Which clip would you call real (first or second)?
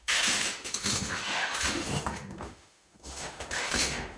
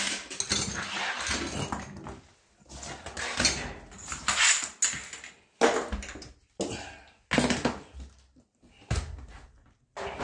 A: second